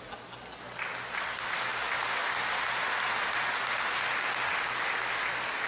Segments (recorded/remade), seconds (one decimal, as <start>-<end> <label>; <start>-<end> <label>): 0.0-5.7 recorded